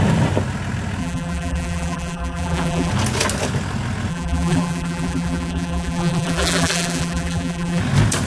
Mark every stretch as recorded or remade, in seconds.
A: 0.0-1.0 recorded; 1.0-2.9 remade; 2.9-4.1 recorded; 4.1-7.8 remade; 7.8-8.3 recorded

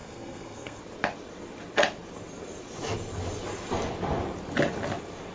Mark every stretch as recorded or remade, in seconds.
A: 0.0-0.8 remade; 0.8-5.3 recorded

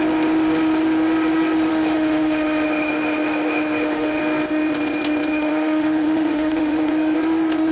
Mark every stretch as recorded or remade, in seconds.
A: 0.0-1.7 recorded; 1.7-4.2 remade; 4.2-5.3 recorded; 5.3-6.9 remade; 6.9-7.7 recorded